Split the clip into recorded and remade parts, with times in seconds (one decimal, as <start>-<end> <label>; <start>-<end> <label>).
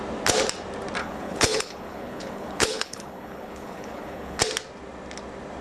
0.0-1.0 recorded; 1.0-4.4 remade; 4.4-5.6 recorded